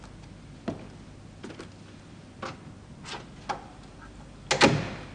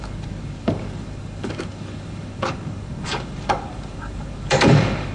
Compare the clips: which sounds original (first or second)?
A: first